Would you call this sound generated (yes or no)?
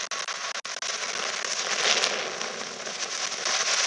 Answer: no